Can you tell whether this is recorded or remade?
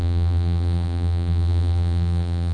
remade